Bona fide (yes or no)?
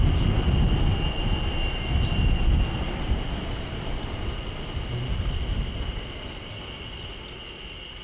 yes